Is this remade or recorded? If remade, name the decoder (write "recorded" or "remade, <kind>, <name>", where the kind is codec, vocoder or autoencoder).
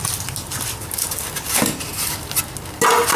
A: recorded